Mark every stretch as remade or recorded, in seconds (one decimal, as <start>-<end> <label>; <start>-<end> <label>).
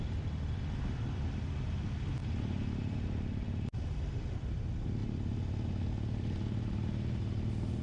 0.0-7.8 recorded